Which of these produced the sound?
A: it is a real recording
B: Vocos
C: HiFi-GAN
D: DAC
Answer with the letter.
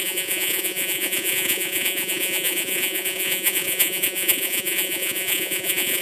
B